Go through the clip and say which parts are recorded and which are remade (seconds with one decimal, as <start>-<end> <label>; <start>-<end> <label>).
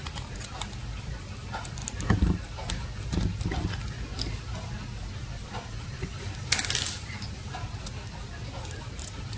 0.0-9.4 recorded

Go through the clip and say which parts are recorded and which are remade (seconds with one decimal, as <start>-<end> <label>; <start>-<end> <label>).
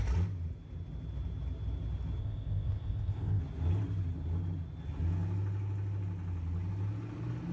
0.0-2.2 recorded; 2.2-3.4 remade; 3.4-7.5 recorded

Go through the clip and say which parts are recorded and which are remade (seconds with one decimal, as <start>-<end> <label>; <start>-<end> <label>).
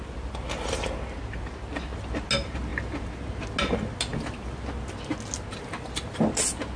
0.0-6.8 recorded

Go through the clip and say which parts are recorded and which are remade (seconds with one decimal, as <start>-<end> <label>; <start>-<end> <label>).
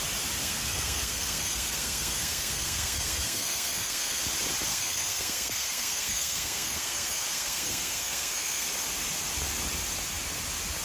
0.0-0.4 recorded; 0.4-4.2 remade; 4.2-4.7 recorded; 4.7-8.7 remade; 8.7-10.8 recorded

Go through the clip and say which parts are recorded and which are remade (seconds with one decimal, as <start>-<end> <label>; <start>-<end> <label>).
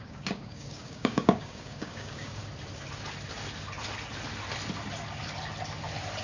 0.0-2.4 remade; 2.4-6.2 recorded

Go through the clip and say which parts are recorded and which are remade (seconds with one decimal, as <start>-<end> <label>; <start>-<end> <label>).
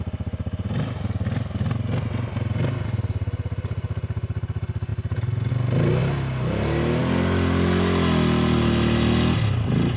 0.0-10.0 recorded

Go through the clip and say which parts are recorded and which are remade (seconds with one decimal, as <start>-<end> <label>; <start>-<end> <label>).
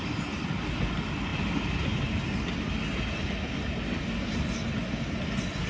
0.0-5.7 recorded